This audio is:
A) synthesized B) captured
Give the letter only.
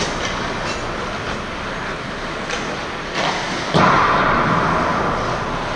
B